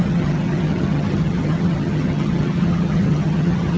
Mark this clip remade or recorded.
remade